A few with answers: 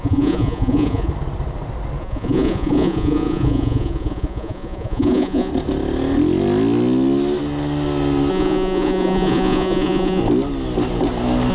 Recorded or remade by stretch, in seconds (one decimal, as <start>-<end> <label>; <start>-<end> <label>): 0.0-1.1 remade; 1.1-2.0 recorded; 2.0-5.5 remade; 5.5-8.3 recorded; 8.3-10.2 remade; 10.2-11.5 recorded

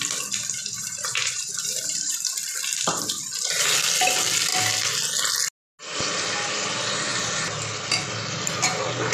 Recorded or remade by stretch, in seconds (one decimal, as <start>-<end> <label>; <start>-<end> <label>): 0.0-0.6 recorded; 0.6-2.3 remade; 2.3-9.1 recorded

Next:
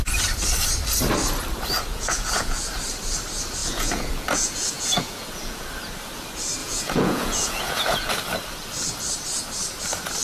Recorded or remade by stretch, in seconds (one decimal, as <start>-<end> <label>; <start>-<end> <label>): 0.0-1.9 recorded; 1.9-2.7 remade; 2.7-3.6 recorded; 3.6-5.6 remade; 5.6-6.6 recorded; 6.6-8.1 remade; 8.1-10.2 recorded